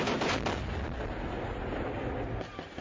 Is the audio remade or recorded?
recorded